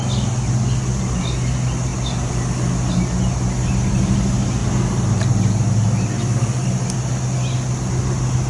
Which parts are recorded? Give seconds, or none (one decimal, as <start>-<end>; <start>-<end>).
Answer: 0.0-8.5